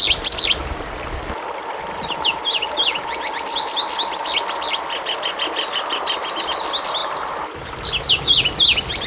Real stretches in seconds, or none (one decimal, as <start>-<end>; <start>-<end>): 0.0-9.1